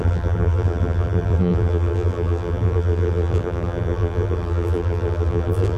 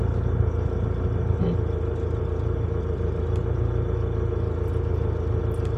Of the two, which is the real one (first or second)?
second